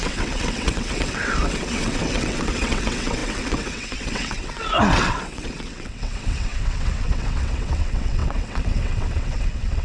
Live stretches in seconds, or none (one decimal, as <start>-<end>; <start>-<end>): none